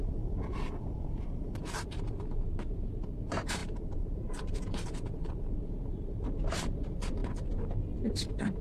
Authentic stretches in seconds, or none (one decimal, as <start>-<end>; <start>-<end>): 7.2-7.8

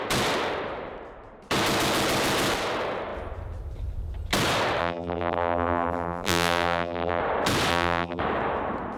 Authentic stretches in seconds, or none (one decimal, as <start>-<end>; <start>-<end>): 0.0-4.8; 7.2-7.7; 8.2-9.0

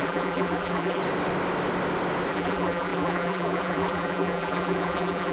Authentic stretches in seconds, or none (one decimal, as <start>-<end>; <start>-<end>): 1.0-2.3

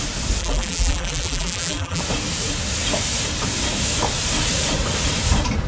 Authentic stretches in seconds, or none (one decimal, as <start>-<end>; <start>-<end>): 0.0-0.4; 2.0-5.7

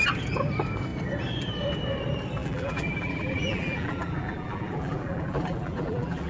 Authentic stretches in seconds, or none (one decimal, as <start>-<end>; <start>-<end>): 0.0-2.4

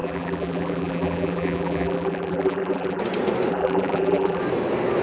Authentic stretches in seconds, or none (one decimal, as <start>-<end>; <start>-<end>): 3.0-3.5; 4.4-5.0

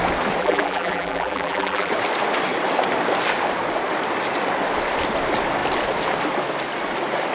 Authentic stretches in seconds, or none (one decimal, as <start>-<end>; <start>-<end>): 0.0-0.4; 1.9-7.3